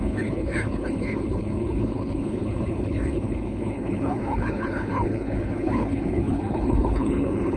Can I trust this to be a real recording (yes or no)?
no